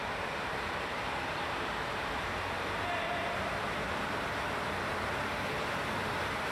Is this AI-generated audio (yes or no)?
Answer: yes